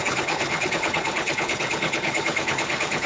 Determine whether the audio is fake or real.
fake